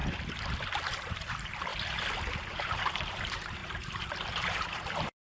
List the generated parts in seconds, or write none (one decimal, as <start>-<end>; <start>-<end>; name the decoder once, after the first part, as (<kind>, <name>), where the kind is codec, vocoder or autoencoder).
1.0-1.7 (vocoder, BigVGAN v2); 2.5-3.6; 4.3-5.2